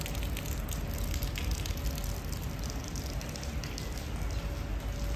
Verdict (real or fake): real